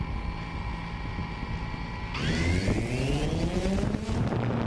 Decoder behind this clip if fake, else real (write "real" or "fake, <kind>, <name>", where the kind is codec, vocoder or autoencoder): real